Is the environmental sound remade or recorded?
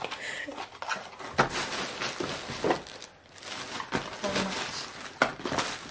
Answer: recorded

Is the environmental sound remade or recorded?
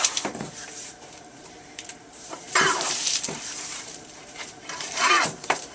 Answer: remade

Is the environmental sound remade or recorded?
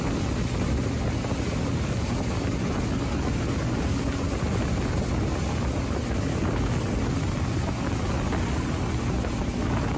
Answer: recorded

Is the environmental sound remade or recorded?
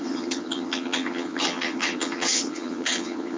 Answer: remade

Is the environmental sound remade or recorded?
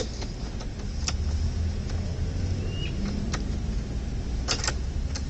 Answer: recorded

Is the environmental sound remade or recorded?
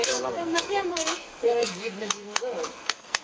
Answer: remade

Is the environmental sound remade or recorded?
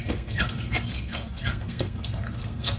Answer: remade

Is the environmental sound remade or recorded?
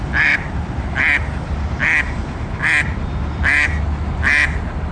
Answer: recorded